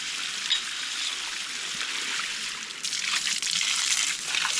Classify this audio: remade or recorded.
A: recorded